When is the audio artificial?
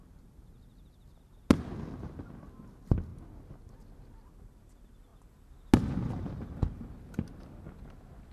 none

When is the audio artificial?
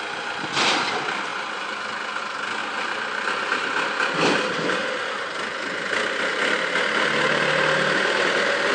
none